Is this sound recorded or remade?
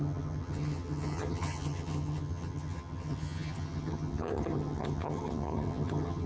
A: remade